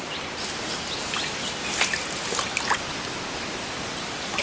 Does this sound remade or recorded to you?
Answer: recorded